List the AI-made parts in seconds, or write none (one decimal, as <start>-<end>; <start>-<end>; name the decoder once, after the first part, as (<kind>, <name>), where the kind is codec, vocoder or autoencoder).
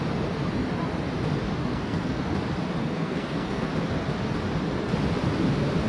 1.6-2.2 (codec, SNAC); 2.8-3.7